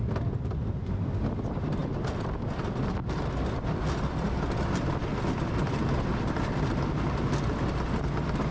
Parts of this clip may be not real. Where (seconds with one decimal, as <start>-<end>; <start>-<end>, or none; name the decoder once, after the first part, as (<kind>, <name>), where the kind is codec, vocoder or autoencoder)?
none